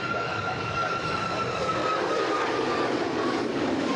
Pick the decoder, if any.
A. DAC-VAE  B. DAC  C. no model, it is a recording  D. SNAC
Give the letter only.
B